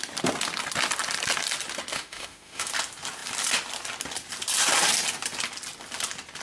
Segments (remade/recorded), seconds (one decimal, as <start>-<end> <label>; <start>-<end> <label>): 0.0-1.9 recorded; 1.9-2.7 remade; 2.7-6.4 recorded